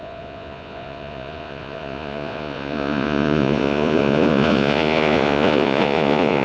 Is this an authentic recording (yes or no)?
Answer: no